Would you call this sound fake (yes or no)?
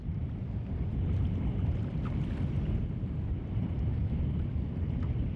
no